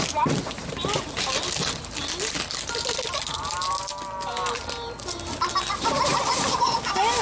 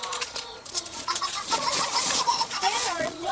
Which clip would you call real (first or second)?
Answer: first